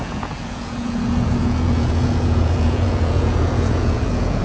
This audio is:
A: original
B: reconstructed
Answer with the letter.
B